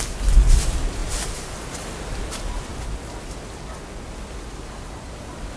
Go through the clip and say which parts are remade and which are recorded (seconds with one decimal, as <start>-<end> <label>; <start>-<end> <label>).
0.0-5.6 recorded